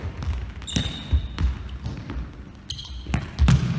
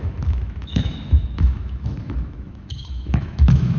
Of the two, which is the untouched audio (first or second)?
first